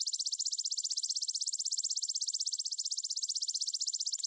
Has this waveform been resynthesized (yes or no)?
no